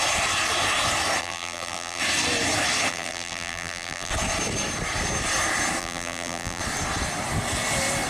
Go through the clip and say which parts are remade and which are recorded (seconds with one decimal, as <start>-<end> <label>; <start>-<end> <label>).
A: 0.0-1.2 recorded; 1.2-2.0 remade; 2.0-2.9 recorded; 2.9-4.1 remade; 4.1-5.8 recorded; 5.8-6.6 remade; 6.6-8.1 recorded